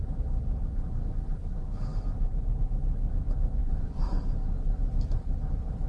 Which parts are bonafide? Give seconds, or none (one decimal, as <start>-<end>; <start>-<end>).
0.0-1.9; 2.7-3.6; 4.2-5.9